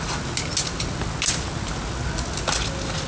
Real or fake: real